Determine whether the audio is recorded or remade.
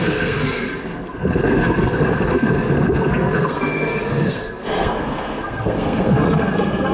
remade